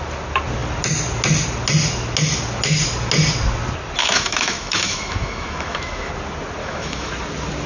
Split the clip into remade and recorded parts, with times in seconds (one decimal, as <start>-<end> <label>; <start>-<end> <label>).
0.0-4.0 recorded; 4.0-6.1 remade; 6.1-6.6 recorded; 6.6-7.1 remade; 7.1-7.7 recorded